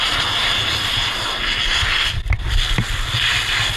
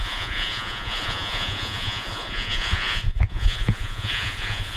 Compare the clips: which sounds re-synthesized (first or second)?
second